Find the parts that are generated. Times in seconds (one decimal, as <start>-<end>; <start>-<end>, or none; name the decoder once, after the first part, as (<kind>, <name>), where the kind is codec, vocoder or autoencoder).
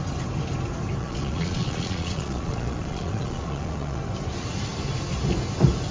1.0-4.0 (vocoder, Vocos)